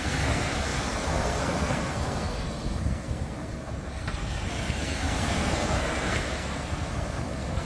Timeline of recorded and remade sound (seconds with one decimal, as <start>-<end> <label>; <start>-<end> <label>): 0.0-7.7 remade